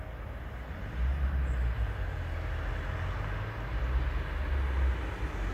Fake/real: real